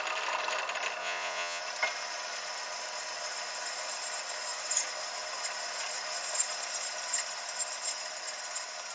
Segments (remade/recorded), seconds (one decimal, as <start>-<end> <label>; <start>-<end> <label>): 0.0-1.0 recorded; 1.0-1.6 remade; 1.6-8.9 recorded